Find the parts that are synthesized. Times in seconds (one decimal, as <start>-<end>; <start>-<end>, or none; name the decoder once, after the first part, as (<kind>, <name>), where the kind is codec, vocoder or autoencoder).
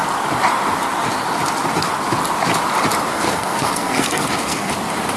3.1-4.7 (codec, SNAC)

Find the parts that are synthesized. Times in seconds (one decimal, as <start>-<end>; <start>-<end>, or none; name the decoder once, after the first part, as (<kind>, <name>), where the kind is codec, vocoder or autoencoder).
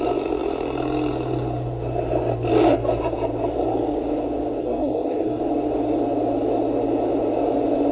4.6-5.4 (codec, SNAC)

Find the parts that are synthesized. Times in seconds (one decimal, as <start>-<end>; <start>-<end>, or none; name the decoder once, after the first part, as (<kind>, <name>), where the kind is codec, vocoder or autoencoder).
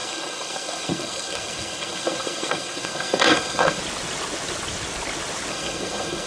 0.0-3.8 (codec, SNAC); 5.5-6.3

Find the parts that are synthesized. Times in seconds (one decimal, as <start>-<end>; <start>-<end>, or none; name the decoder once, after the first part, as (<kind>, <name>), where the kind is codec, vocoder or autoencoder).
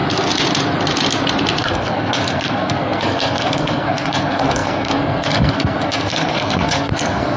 1.6-7.4 (codec, SNAC)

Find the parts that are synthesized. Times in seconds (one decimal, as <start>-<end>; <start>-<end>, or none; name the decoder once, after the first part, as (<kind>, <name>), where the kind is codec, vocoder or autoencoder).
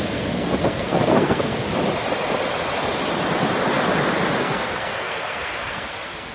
0.0-1.6 (codec, SNAC); 4.4-6.3